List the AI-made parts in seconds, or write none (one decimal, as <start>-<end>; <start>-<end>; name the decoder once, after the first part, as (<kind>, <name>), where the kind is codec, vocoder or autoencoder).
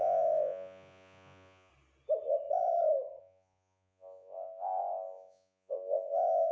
0.0-1.7 (vocoder, Vocos); 3.2-6.5